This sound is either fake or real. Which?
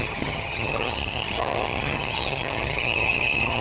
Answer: fake